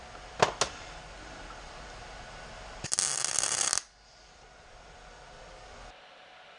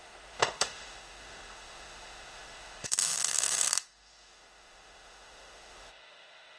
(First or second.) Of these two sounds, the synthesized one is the second